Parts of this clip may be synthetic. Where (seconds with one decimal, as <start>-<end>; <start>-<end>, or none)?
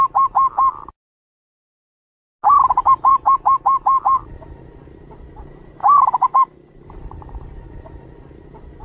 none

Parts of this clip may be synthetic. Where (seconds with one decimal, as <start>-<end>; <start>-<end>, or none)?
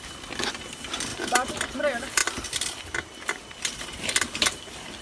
none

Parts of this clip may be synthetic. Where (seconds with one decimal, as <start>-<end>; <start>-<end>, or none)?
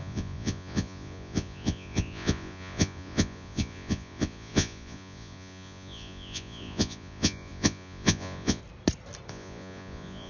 0.0-8.6; 9.3-10.3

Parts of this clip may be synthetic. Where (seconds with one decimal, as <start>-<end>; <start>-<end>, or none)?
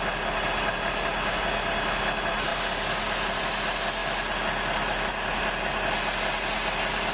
none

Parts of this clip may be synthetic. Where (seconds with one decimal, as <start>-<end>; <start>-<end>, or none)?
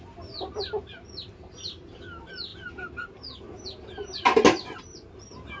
none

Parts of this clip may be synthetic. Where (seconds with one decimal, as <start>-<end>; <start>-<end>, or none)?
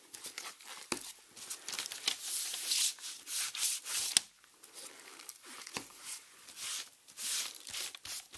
5.6-6.4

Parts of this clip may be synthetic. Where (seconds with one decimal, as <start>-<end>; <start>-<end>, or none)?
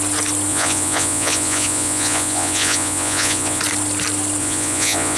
0.5-3.6; 4.4-5.2